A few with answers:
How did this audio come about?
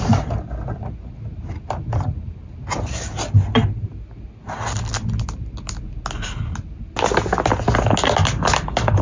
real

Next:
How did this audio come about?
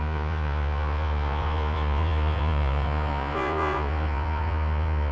fake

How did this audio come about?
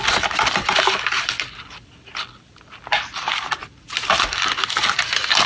real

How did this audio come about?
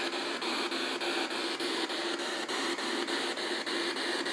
real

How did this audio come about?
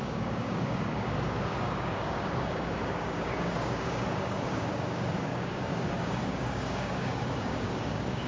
fake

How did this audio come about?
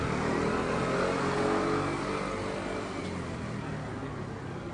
real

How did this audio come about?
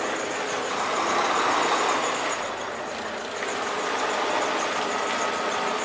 real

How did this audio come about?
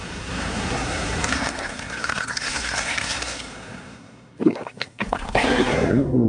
fake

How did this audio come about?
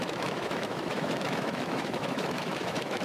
fake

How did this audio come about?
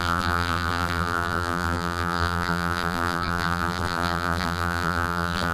fake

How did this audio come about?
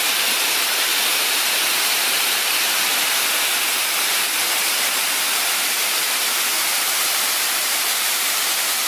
fake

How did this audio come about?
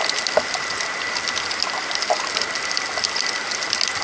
real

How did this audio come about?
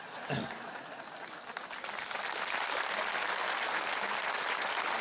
real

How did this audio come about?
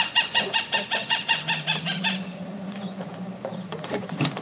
fake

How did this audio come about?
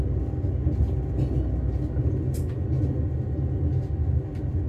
real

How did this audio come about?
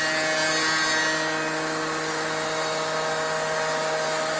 real